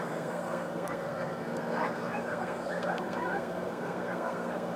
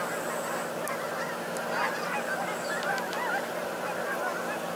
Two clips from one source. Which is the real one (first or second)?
second